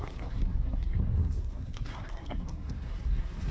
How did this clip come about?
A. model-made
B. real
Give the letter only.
A